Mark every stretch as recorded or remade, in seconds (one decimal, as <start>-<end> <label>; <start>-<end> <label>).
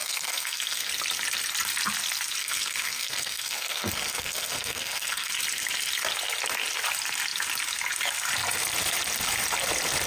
0.0-0.9 remade; 0.9-2.4 recorded; 2.4-5.3 remade; 5.3-10.1 recorded